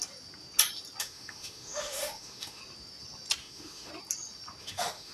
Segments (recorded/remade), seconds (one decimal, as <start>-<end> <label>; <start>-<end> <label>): 0.0-1.0 recorded; 1.0-2.6 remade; 2.6-3.4 recorded; 3.4-3.9 remade; 3.9-4.6 recorded; 4.6-5.1 remade